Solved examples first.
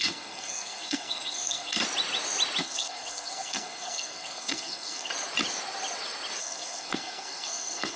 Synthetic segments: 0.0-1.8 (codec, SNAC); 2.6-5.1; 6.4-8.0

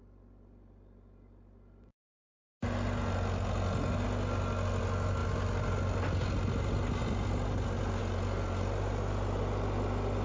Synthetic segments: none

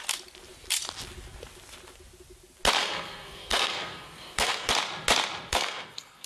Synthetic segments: 2.8-4.7 (codec, SNAC); 5.5-6.3